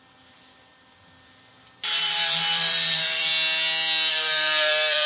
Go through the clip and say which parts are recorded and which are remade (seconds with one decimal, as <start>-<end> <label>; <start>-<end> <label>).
0.0-1.5 remade; 1.5-2.0 recorded; 2.0-3.3 remade; 3.3-4.1 recorded; 4.1-5.1 remade